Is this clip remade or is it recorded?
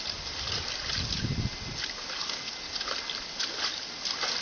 recorded